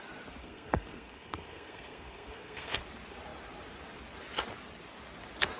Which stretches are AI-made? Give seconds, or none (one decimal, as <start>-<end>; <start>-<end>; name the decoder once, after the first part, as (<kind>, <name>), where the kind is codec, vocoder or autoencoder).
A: 0.4-2.8 (codec, SNAC)